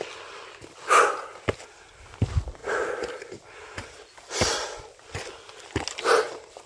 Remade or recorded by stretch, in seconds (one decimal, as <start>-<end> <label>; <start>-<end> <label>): 0.0-6.7 recorded